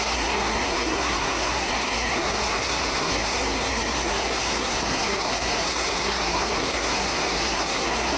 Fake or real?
fake